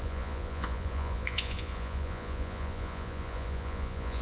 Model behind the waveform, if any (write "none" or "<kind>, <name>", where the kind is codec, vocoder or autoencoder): vocoder, Vocos